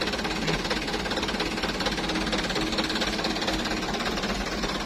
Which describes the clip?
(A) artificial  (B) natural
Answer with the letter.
B